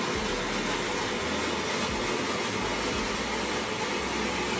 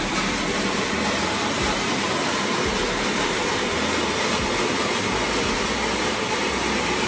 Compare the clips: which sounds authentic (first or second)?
first